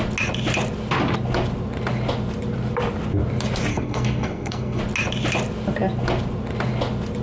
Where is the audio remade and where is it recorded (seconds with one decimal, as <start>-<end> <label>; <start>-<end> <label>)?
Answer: 0.0-3.7 recorded; 3.7-4.8 remade; 4.8-7.2 recorded